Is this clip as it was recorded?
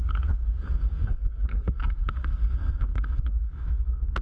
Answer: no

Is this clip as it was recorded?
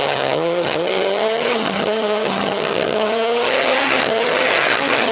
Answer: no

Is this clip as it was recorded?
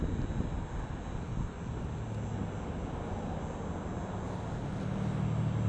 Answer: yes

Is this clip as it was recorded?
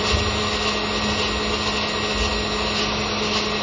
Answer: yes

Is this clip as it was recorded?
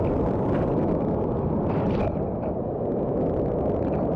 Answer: yes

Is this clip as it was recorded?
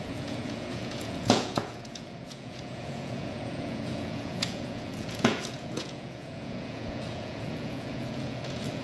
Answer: no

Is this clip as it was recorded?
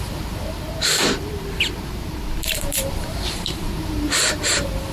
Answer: no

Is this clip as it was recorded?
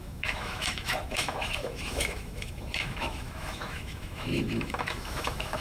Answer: no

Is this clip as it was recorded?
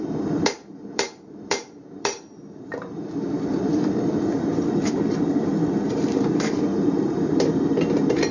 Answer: no